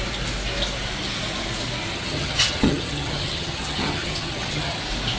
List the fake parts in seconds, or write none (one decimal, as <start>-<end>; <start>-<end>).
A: 1.9-4.8